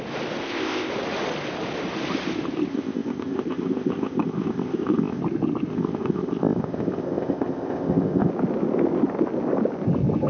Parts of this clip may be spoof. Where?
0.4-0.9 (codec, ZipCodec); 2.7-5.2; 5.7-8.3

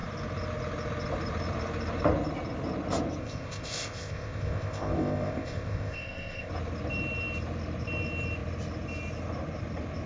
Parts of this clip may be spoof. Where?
3.2-6.5 (codec, ZipCodec)

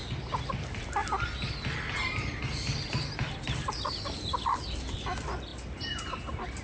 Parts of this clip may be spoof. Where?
none

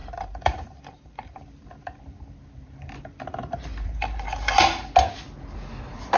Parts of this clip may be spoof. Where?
0.0-4.8 (vocoder, BigVGAN v2)

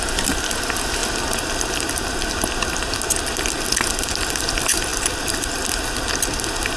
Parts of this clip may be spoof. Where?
4.9-5.5 (vocoder, BigVGAN v2)

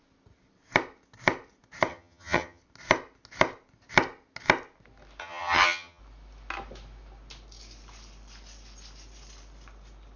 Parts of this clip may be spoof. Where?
1.9-2.6 (vocoder, HiFi-GAN); 5.2-6.0

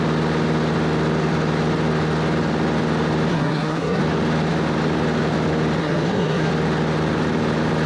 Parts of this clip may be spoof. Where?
3.3-4.0 (codec, SNAC); 5.8-6.5

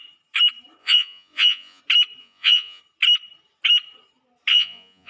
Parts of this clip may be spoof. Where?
0.8-1.8 (vocoder, Vocos); 2.2-2.8; 4.5-5.1